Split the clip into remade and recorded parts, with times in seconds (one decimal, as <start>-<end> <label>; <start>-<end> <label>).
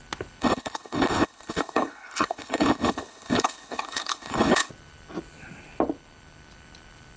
0.0-0.4 recorded; 0.4-4.7 remade; 4.7-7.2 recorded